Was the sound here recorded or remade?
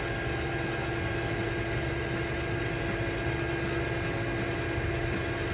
recorded